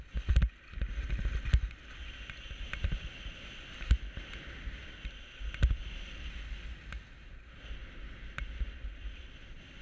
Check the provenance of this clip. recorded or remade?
recorded